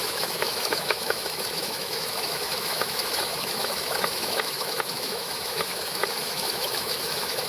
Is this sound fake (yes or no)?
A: yes